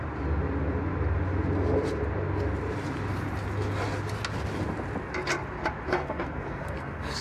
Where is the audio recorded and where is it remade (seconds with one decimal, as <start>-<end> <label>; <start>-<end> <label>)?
0.0-5.9 recorded; 5.9-7.2 remade